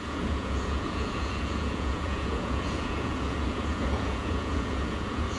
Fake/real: fake